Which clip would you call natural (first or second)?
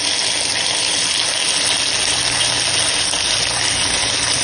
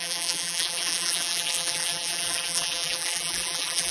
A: first